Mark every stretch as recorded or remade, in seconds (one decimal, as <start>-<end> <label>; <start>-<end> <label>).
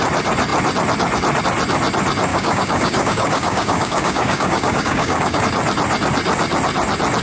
0.0-2.3 recorded; 2.3-5.4 remade; 5.4-7.2 recorded